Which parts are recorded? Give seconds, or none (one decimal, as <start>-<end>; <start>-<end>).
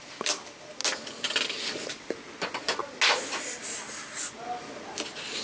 0.0-5.4